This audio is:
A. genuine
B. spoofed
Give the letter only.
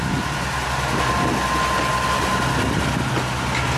A